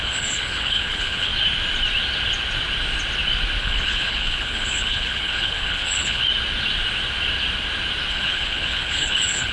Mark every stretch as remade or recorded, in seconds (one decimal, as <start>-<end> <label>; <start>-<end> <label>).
0.0-1.3 remade; 1.3-3.6 recorded; 3.6-6.2 remade; 6.2-8.1 recorded; 8.1-9.5 remade